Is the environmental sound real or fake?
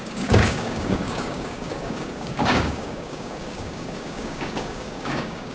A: fake